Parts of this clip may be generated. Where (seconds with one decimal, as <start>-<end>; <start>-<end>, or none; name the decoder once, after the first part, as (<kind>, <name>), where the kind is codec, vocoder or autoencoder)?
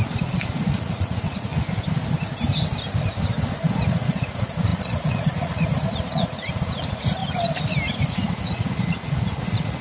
0.0-1.5 (vocoder, Vocos); 3.5-7.2; 8.1-9.8